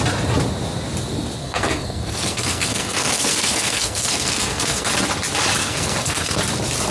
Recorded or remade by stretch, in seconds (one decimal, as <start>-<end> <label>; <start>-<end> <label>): 0.0-1.4 recorded; 1.4-4.9 remade; 4.9-5.6 recorded; 5.6-6.4 remade; 6.4-6.9 recorded